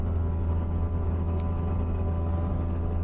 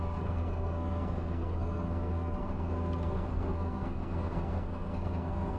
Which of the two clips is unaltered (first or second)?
first